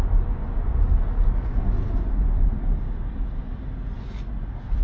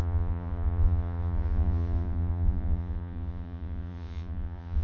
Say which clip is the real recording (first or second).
first